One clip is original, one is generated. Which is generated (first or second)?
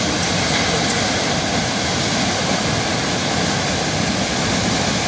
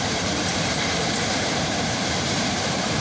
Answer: second